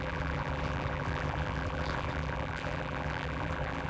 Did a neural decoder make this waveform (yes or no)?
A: yes